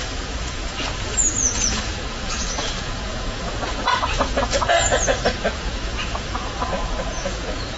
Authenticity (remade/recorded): remade